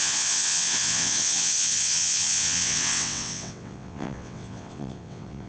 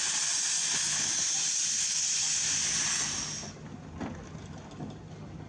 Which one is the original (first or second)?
second